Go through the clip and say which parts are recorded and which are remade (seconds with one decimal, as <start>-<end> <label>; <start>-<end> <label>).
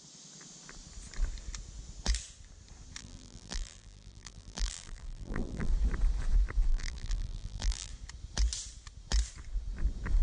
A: 0.0-3.0 recorded; 3.0-5.7 remade; 5.7-6.7 recorded; 6.7-7.9 remade; 7.9-10.2 recorded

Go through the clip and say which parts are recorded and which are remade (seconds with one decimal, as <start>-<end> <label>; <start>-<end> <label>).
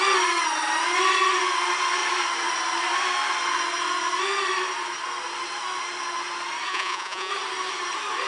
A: 0.0-6.7 recorded; 6.7-7.3 remade; 7.3-8.3 recorded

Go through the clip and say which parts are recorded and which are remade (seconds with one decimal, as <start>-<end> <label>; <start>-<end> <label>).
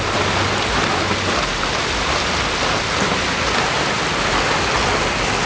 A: 0.0-1.5 recorded; 1.5-2.3 remade; 2.3-5.5 recorded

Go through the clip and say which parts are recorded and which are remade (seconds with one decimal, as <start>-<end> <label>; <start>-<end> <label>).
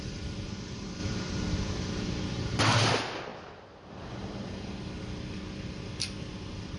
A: 0.0-1.0 remade; 1.0-2.6 recorded; 2.6-3.3 remade; 3.3-4.1 recorded; 4.1-6.8 remade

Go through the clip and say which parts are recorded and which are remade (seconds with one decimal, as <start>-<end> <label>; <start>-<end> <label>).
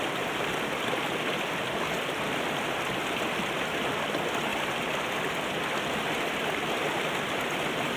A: 0.0-8.0 recorded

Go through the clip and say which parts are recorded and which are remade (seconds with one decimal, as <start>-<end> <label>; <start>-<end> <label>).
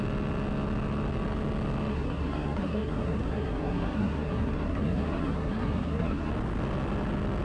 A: 0.0-1.9 recorded; 1.9-6.3 remade; 6.3-7.4 recorded